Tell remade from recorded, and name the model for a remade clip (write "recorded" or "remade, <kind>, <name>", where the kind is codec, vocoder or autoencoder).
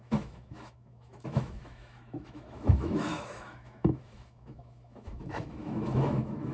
remade, autoencoder, DAC-VAE